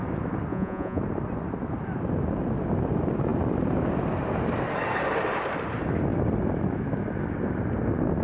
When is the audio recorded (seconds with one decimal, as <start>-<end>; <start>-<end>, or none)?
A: 0.0-0.5; 1.0-8.2